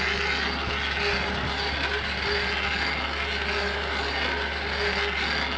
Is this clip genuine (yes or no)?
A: yes